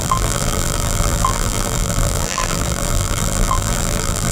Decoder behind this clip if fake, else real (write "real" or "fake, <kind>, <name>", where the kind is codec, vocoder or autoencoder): fake, vocoder, BigVGAN v2